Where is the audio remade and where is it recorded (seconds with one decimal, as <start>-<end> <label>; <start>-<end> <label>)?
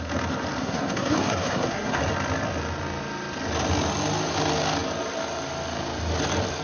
0.0-0.6 recorded; 0.6-2.0 remade; 2.0-6.6 recorded